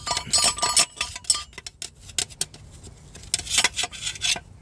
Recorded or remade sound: recorded